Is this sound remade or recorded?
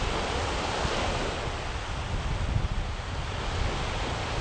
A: recorded